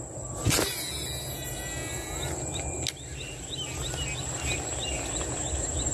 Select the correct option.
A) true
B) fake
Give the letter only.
A